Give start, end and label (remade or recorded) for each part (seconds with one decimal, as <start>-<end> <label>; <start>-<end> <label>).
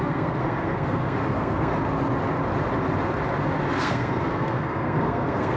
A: 0.0-1.7 remade; 1.7-3.7 recorded; 3.7-5.6 remade